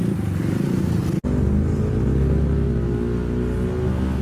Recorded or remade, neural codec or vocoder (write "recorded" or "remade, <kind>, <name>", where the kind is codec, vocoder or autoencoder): recorded